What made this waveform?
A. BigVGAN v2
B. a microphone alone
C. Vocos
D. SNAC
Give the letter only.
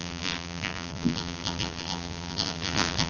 A